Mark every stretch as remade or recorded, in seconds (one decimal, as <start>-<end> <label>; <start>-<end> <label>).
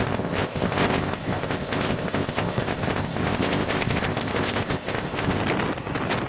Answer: 0.0-5.4 remade; 5.4-6.3 recorded